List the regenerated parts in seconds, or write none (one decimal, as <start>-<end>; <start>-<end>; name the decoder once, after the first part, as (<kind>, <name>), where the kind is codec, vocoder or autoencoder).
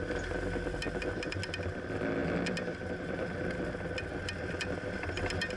none